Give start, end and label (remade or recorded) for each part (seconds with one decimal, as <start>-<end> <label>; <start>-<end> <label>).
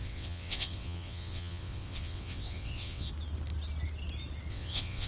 0.0-3.1 remade; 3.1-4.5 recorded; 4.5-5.1 remade